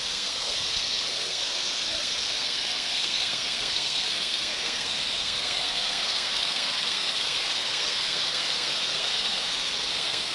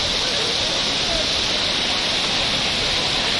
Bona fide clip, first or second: second